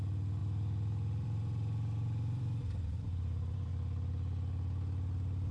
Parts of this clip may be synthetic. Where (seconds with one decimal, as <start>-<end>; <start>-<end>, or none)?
0.4-3.7